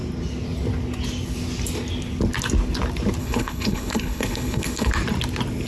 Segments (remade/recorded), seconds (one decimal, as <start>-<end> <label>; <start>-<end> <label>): 0.0-3.2 recorded; 3.2-4.9 remade; 4.9-5.7 recorded

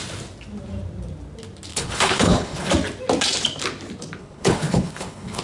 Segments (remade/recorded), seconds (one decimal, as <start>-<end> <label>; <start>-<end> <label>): 0.0-1.7 recorded; 1.7-2.7 remade; 2.7-4.2 recorded; 4.2-5.4 remade

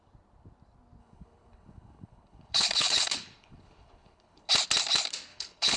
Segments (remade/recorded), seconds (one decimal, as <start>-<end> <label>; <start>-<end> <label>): 0.0-1.0 recorded; 1.0-4.5 remade; 4.5-5.3 recorded; 5.3-5.8 remade

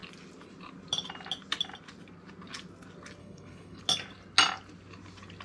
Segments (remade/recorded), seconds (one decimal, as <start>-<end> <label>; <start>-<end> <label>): 0.0-3.2 recorded; 3.2-3.8 remade; 3.8-5.4 recorded